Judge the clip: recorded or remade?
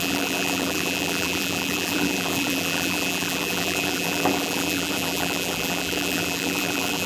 remade